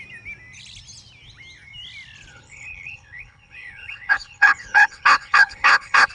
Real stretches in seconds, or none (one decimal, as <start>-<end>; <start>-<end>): 0.0-2.3